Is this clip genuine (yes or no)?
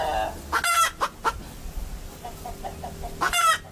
yes